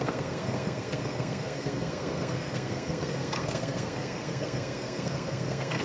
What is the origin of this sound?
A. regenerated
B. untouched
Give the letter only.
A